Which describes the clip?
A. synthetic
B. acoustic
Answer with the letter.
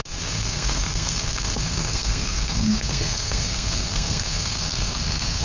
A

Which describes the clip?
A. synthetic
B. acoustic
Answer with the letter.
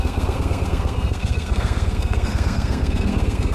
A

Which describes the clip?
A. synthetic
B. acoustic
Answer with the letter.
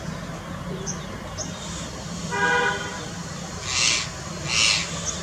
B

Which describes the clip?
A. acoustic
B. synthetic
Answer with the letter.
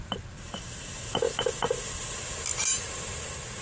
A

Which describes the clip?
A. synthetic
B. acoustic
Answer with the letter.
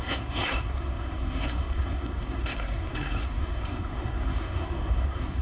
A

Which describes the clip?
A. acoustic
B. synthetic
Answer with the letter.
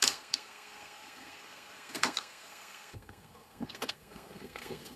B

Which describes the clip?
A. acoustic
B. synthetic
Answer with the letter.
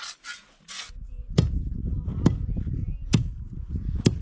A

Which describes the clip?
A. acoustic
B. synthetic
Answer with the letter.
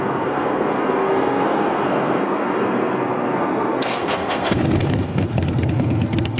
B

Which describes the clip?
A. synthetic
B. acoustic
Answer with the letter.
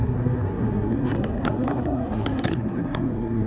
A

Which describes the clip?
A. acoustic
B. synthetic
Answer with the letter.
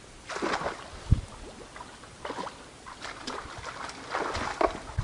A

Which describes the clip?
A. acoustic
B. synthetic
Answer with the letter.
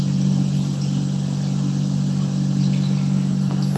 A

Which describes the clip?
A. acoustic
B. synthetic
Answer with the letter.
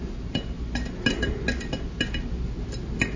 A